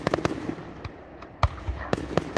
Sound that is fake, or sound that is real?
real